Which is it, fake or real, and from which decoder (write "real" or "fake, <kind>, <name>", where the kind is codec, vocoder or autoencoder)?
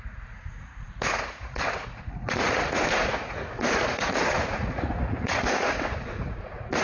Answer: fake, vocoder, Vocos